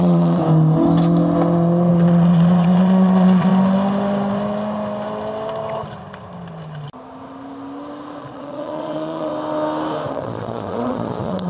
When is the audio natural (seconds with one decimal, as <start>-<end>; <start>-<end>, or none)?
0.4-1.9; 3.5-8.2; 9.3-10.1